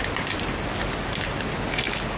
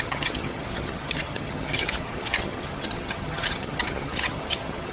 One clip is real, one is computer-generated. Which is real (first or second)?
first